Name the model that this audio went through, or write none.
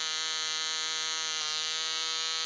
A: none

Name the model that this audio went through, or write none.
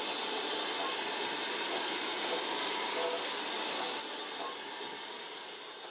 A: none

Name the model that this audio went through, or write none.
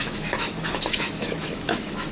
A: autoencoder, DAC-VAE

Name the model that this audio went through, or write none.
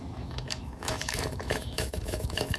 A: autoencoder, DAC-VAE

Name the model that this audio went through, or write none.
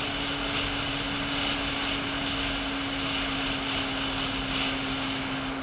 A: none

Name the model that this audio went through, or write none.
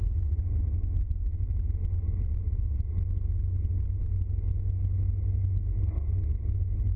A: none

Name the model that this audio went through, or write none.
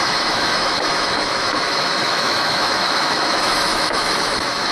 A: autoencoder, DAC-VAE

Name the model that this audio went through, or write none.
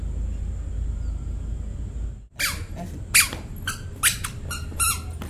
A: none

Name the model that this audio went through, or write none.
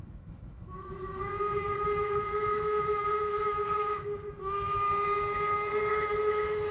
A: autoencoder, DAC-VAE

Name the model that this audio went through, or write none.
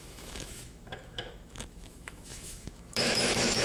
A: autoencoder, DAC-VAE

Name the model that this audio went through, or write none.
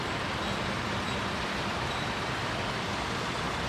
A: none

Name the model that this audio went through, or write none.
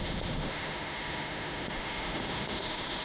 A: autoencoder, DAC-VAE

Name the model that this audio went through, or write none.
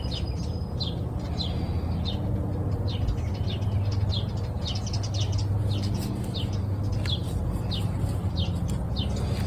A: none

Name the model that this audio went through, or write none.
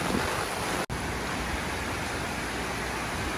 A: none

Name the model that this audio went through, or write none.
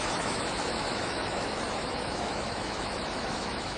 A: autoencoder, DAC-VAE